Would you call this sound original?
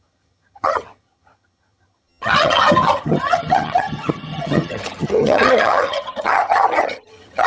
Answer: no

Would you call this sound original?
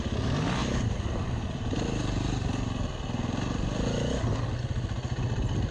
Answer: yes